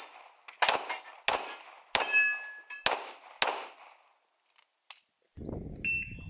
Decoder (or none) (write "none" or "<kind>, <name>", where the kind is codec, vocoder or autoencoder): none